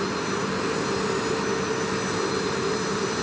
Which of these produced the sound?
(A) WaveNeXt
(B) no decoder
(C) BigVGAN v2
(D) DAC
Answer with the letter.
B